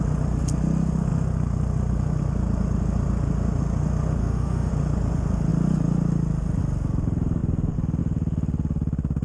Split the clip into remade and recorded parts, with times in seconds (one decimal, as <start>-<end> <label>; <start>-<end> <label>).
0.0-4.2 recorded; 4.2-4.7 remade; 4.7-9.2 recorded